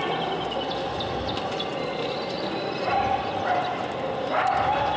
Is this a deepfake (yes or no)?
no